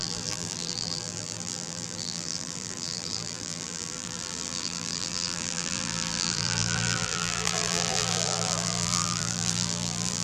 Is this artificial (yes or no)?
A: yes